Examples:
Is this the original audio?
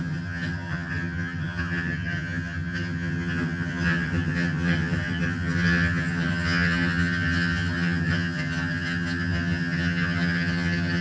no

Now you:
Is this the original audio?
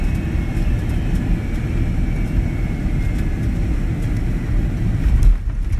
yes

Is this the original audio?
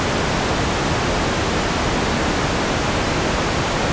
yes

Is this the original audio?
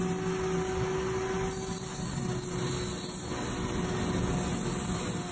yes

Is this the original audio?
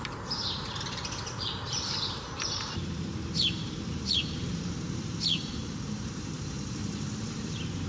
no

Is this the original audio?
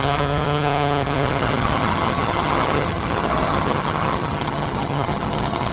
no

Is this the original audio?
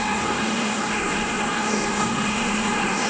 no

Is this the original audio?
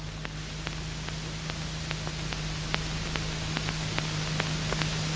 yes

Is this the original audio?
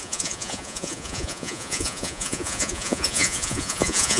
no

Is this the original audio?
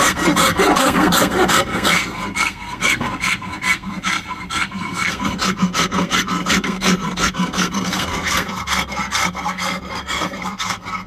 no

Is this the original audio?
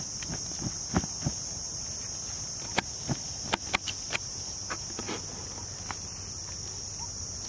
yes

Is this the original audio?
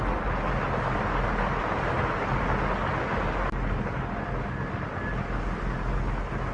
yes